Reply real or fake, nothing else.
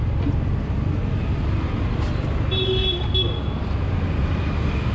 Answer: real